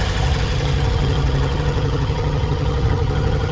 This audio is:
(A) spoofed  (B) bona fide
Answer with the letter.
A